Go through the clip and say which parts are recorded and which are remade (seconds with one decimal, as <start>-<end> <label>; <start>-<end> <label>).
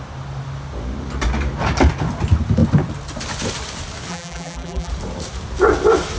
0.0-4.1 recorded; 4.1-4.9 remade; 4.9-6.2 recorded